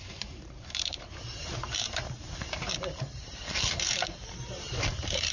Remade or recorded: remade